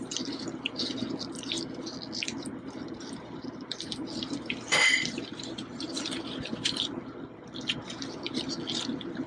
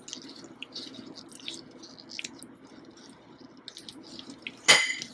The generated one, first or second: first